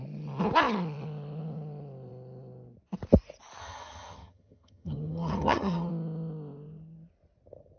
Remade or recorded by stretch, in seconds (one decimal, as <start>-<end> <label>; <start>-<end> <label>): 0.0-3.6 recorded; 3.6-5.9 remade; 5.9-7.8 recorded